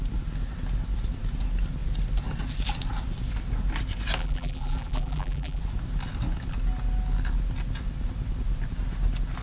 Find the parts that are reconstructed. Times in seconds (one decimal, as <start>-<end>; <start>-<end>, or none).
4.2-5.6